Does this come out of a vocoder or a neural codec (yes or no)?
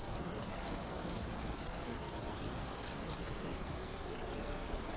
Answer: yes